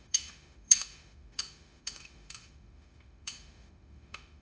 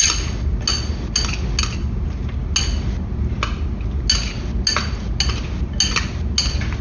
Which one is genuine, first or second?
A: second